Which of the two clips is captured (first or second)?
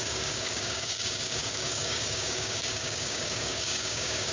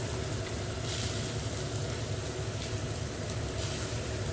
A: second